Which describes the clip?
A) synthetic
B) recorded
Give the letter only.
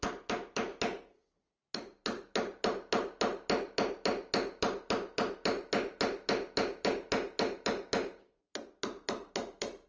B